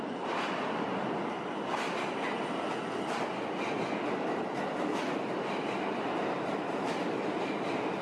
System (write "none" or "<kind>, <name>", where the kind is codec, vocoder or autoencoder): none